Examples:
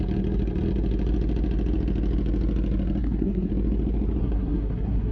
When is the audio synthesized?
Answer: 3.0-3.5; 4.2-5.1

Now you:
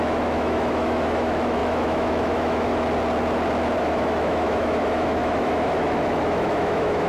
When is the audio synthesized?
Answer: 0.0-2.7; 3.8-7.1

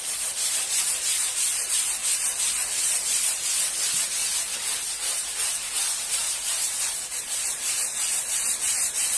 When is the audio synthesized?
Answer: none